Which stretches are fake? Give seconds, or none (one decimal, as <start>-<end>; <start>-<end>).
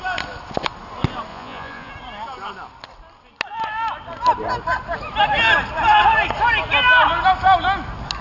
1.3-1.9